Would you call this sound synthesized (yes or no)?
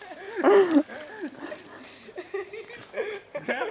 no